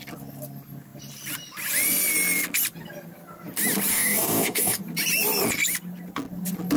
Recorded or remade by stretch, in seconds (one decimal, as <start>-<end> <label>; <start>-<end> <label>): 0.0-3.9 recorded; 3.9-4.8 remade; 4.8-6.8 recorded